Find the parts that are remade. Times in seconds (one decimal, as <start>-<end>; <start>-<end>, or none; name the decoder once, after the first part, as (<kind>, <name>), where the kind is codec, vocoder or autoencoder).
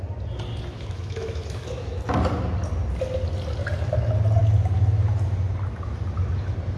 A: 0.7-2.0 (autoencoder, DAC-VAE)